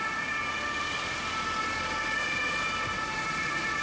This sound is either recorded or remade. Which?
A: recorded